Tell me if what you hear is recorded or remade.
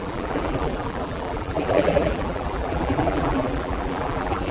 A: remade